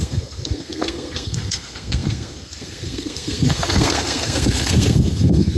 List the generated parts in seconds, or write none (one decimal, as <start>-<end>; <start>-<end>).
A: 0.0-5.6